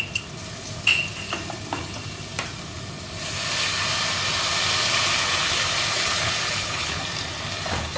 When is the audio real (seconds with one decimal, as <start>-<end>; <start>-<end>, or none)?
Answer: 0.0-5.9; 7.0-8.0